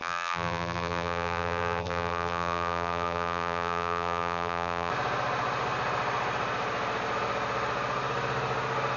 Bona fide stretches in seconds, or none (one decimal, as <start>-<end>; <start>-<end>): 4.9-9.0